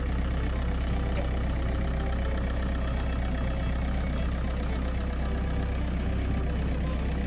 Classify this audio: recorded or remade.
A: recorded